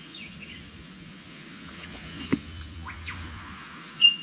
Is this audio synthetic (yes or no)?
yes